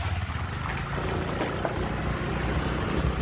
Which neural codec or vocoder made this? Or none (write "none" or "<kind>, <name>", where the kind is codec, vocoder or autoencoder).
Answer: none